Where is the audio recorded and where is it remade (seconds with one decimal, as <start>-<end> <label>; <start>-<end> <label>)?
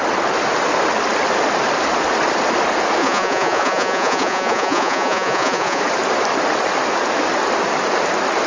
0.0-3.0 recorded; 3.0-5.8 remade; 5.8-8.5 recorded